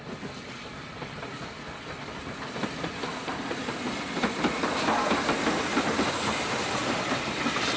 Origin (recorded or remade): recorded